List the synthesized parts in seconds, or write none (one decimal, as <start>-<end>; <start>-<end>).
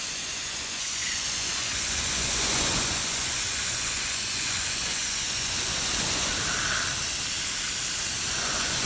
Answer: 0.0-6.3; 8.3-8.9